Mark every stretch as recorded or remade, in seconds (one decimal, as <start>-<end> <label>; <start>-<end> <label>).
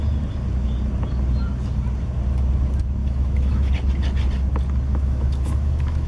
0.0-3.0 recorded; 3.0-3.7 remade; 3.7-4.9 recorded; 4.9-6.1 remade